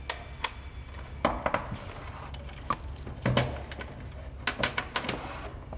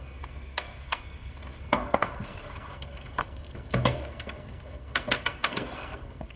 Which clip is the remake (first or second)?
second